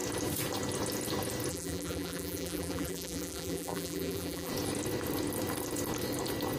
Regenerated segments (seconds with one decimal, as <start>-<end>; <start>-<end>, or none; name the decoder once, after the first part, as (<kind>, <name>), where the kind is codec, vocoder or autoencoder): 1.5-4.5 (vocoder, BigVGAN v2)